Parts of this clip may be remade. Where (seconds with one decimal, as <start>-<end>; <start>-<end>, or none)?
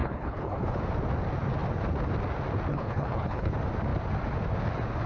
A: 0.0-0.8; 2.7-3.5